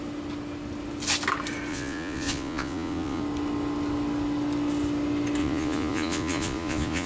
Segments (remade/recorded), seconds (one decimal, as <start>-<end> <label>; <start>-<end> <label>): 0.0-1.7 recorded; 1.7-3.2 remade; 3.2-5.4 recorded; 5.4-7.1 remade